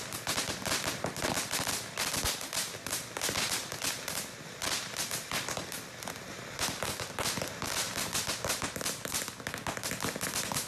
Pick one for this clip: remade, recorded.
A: recorded